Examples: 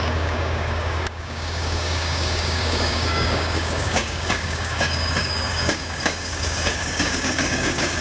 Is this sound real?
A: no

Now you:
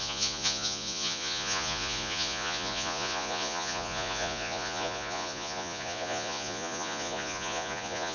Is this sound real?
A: no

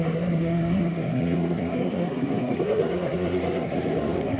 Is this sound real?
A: no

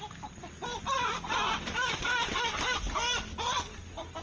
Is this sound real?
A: yes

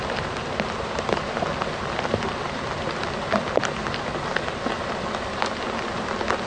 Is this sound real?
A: yes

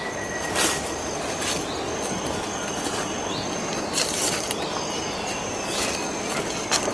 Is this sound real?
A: yes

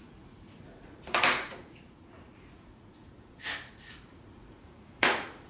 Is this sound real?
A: no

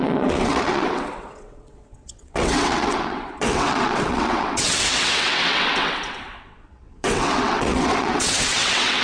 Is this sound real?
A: no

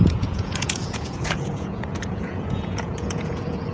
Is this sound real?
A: no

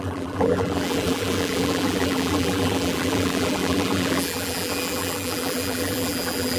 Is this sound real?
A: no